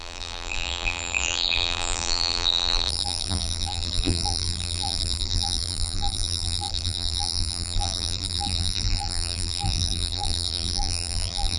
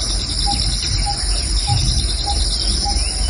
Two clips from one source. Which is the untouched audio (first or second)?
second